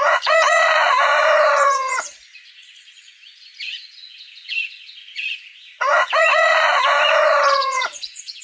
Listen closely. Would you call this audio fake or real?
fake